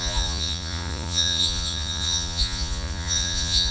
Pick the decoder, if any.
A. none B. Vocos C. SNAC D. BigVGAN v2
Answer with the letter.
B